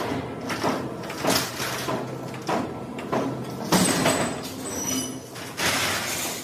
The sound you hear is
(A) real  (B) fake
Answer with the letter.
A